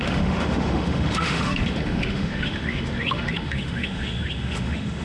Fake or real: fake